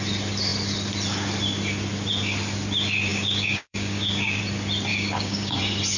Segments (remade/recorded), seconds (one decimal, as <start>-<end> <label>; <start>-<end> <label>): 0.0-3.1 recorded; 3.1-4.4 remade; 4.4-4.9 recorded; 4.9-5.6 remade; 5.6-6.0 recorded